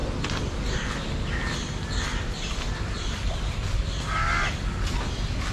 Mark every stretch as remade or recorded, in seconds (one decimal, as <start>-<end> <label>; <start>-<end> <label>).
0.0-5.5 recorded